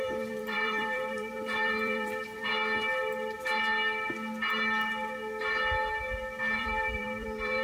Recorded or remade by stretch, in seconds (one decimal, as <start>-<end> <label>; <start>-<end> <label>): 0.0-2.5 remade; 2.5-6.6 recorded; 6.6-7.6 remade